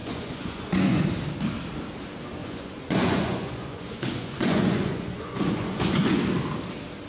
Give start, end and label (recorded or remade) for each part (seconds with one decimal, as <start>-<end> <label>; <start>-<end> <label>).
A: 0.0-1.0 remade; 1.0-2.4 recorded; 2.4-6.2 remade; 6.2-7.1 recorded